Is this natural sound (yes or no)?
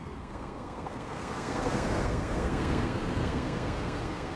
no